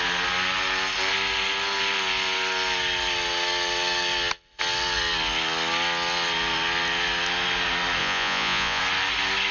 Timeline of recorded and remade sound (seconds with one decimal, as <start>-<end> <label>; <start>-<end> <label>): 0.0-8.0 recorded; 8.0-8.8 remade; 8.8-9.5 recorded